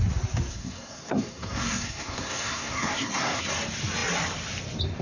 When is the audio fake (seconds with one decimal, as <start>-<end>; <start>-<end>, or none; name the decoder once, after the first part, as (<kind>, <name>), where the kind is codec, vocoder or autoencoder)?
0.5-3.5 (codec, SNAC)

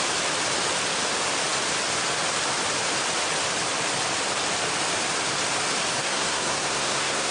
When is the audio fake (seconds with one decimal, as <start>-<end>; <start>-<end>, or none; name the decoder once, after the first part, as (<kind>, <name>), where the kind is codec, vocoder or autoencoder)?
6.0-7.3 (codec, SNAC)

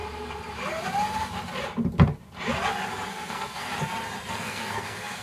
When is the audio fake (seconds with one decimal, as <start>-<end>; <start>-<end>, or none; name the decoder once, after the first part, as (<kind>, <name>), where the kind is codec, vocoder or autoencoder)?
3.1-3.7 (codec, SNAC); 4.3-5.2

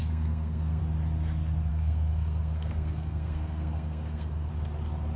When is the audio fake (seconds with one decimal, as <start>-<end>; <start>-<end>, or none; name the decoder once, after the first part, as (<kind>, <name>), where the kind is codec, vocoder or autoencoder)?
0.0-0.8 (codec, SNAC); 1.7-4.5

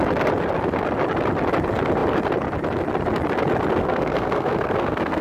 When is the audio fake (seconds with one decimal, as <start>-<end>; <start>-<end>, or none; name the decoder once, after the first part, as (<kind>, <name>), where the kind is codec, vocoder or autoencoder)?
3.8-5.2 (codec, SNAC)

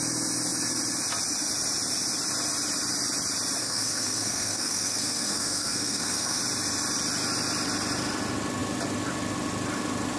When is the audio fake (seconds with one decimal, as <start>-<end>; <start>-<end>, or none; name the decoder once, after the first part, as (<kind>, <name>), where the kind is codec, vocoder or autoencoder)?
3.6-6.4 (codec, SNAC)

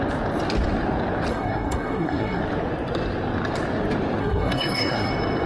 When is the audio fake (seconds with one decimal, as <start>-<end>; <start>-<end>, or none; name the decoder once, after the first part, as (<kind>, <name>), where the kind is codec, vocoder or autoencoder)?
1.3-2.4 (codec, SNAC); 4.2-5.1